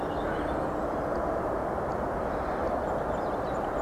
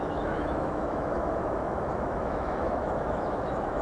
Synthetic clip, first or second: second